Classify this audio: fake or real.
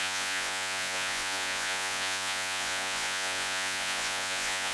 fake